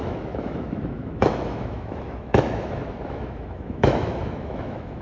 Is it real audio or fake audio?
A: fake